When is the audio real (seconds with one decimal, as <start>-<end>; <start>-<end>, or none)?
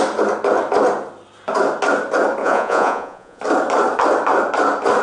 0.0-2.4; 3.4-5.0